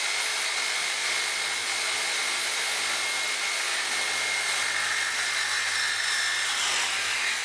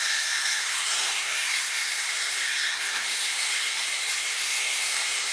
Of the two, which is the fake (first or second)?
second